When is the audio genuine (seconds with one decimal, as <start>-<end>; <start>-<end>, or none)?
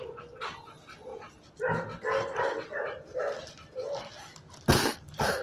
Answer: 0.0-5.4